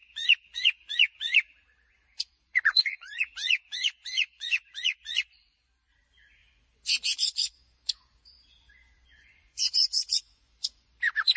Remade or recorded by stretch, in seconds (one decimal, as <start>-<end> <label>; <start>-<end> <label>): 0.0-11.4 remade